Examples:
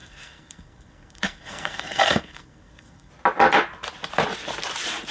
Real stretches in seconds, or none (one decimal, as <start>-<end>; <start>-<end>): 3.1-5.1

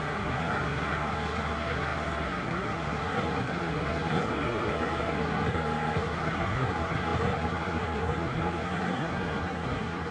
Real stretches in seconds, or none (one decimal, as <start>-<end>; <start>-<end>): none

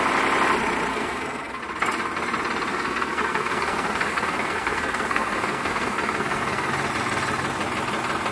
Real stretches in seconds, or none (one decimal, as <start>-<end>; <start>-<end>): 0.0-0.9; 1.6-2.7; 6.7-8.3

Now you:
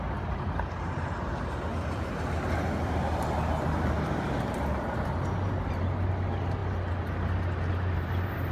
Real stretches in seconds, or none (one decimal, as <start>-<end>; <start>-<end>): 0.0-8.5

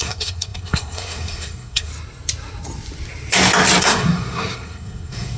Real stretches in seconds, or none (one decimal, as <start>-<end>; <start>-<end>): 1.9-3.8